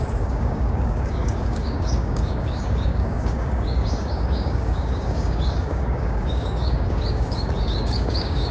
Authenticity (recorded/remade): remade